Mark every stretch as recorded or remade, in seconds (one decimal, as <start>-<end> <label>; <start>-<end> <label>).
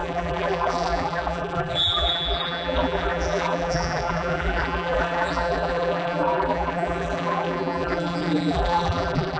0.0-9.4 remade